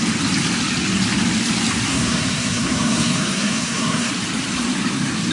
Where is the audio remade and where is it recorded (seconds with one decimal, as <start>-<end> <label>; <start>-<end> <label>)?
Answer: 0.0-1.9 recorded; 1.9-4.1 remade; 4.1-5.3 recorded